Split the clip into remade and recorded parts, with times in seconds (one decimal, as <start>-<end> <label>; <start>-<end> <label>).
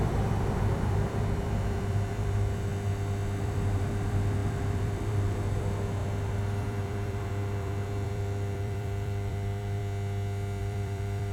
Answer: 0.0-2.7 remade; 2.7-3.4 recorded; 3.4-9.8 remade; 9.8-10.6 recorded; 10.6-11.3 remade